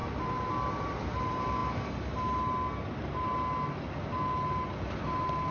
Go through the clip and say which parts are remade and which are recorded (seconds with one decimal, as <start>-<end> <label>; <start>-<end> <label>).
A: 0.0-5.5 recorded